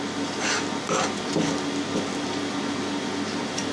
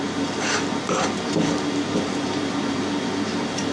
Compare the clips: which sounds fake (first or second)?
second